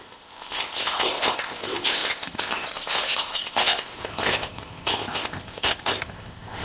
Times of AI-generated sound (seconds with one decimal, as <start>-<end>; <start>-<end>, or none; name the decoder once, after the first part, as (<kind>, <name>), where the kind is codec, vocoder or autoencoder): 0.0-6.6 (codec, ZipCodec)